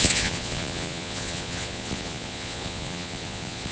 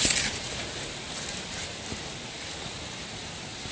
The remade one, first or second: first